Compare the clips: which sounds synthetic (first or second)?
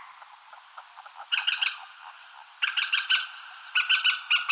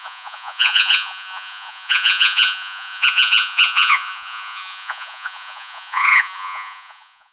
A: second